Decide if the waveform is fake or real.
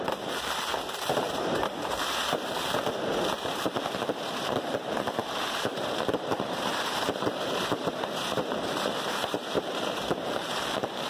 fake